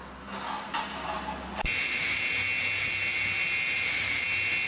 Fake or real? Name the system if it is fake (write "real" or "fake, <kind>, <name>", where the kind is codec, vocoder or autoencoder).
real